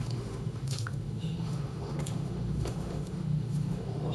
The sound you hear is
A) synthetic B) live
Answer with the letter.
A